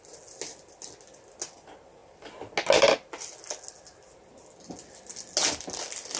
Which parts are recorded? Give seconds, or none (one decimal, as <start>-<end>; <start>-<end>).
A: 0.0-6.2